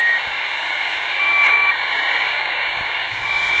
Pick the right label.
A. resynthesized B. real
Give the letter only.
A